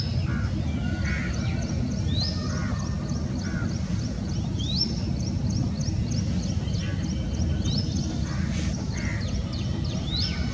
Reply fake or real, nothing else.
real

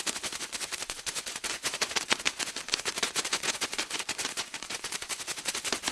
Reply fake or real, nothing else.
fake